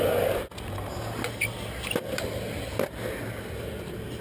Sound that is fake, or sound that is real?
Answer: real